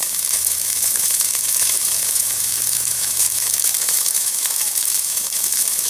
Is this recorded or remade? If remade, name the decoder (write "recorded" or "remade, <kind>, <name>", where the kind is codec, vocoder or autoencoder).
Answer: remade, autoencoder, DAC-VAE